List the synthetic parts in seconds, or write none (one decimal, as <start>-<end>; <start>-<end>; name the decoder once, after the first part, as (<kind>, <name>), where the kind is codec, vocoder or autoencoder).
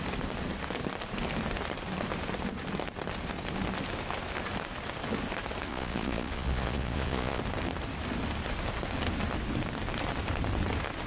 5.7-7.4 (vocoder, Vocos)